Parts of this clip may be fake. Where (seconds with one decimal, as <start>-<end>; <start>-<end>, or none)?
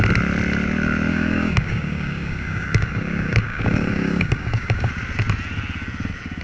1.1-4.9